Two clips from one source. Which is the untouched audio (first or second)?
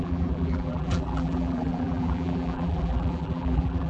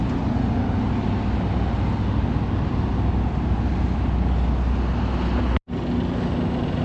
second